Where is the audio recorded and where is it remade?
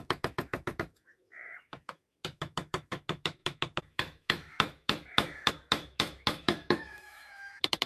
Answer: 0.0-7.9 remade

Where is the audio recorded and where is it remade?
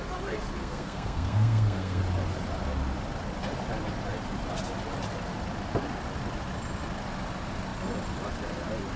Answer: 0.0-0.6 recorded; 0.6-2.0 remade; 2.0-9.0 recorded